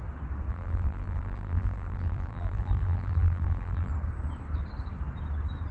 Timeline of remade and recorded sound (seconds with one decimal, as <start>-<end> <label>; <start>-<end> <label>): 0.0-0.5 recorded; 0.5-3.9 remade; 3.9-5.7 recorded